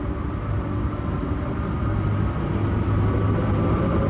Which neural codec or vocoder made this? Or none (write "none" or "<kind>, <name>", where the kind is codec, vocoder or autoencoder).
none